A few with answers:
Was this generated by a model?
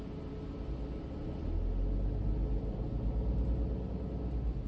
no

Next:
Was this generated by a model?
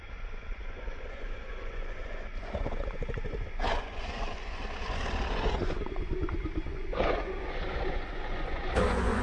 yes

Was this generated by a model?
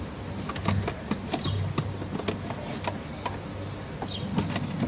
no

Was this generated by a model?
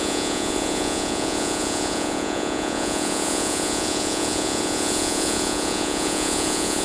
yes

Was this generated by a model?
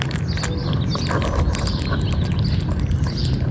no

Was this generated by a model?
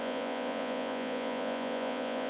yes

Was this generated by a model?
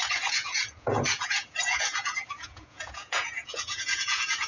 yes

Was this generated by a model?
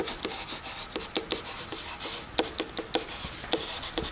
no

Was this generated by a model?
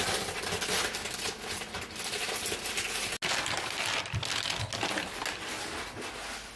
no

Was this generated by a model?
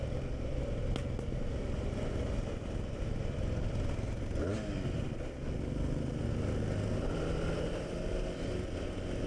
no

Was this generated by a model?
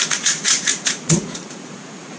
yes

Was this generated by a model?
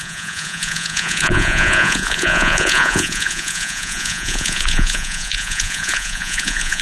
yes